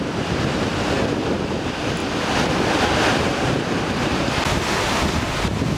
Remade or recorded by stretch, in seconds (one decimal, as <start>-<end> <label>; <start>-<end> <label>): 0.0-5.8 recorded